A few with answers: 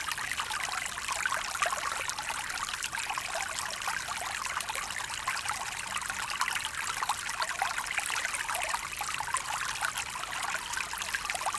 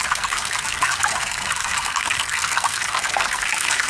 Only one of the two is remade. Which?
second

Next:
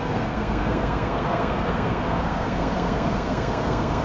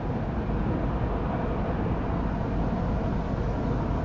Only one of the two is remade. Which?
first